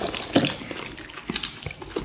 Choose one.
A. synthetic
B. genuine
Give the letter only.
B